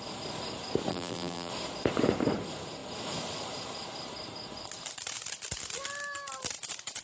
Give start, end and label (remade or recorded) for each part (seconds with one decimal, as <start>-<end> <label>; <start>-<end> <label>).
0.0-0.9 recorded; 0.9-1.5 remade; 1.5-7.0 recorded